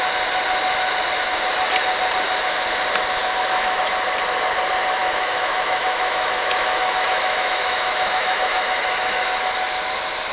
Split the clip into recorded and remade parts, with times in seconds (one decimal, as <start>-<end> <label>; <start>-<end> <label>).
0.0-3.2 recorded; 3.2-3.8 remade; 3.8-5.0 recorded; 5.0-9.2 remade; 9.2-10.3 recorded